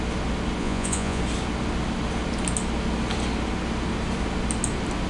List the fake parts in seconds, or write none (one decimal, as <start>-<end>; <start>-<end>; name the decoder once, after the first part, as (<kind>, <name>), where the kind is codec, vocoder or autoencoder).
0.6-1.2 (vocoder, Vocos)